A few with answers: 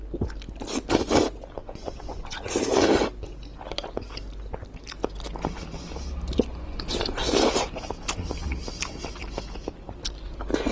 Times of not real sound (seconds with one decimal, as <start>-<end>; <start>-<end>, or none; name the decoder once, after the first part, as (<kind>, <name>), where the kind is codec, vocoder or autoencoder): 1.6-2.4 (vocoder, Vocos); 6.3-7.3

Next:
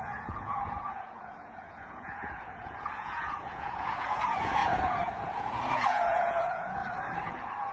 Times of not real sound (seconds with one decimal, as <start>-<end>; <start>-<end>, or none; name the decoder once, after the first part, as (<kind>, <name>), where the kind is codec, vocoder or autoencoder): 0.0-6.8 (vocoder, Vocos); 7.3-7.7

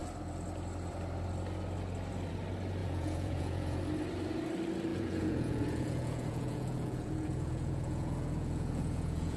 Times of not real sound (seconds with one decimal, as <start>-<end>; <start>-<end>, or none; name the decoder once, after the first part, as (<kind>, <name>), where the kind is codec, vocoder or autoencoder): 2.8-3.8 (vocoder, Vocos); 4.9-9.4